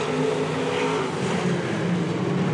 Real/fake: real